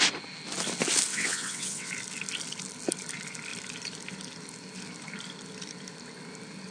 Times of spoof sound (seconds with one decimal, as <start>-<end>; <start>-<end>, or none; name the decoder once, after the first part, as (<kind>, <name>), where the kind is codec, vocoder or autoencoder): 1.1-1.9 (vocoder, WaveNeXt)